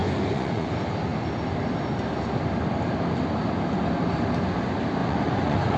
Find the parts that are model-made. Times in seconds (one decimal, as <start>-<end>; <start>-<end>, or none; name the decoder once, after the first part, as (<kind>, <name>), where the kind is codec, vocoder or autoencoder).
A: 0.0-0.7 (vocoder, Vocos); 5.0-5.8